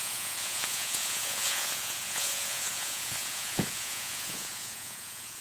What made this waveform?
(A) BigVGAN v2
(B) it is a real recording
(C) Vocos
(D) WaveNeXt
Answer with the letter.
C